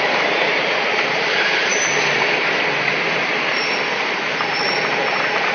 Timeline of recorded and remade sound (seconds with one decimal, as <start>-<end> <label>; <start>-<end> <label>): 0.0-1.7 remade; 1.7-5.0 recorded; 5.0-5.5 remade

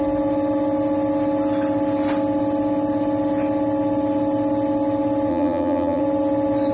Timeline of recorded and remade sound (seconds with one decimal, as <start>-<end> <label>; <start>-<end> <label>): 0.0-5.3 recorded; 5.3-6.0 remade; 6.0-6.7 recorded